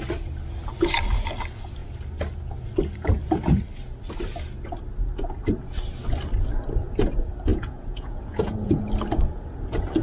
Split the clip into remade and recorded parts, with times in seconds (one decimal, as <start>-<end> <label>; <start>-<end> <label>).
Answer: 0.0-7.5 recorded; 7.5-8.8 remade; 8.8-10.0 recorded